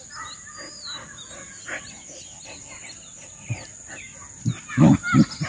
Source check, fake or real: real